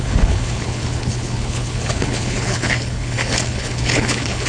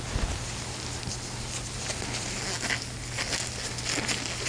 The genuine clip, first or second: second